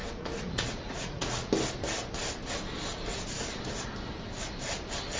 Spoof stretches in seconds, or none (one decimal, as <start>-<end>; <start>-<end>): 0.0-1.5